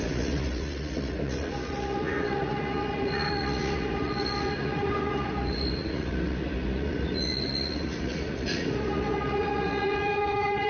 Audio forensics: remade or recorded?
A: remade